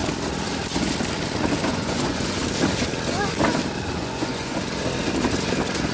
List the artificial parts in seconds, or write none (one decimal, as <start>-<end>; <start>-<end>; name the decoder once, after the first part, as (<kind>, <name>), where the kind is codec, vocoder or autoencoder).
1.7-2.4 (vocoder, Vocos); 4.0-4.6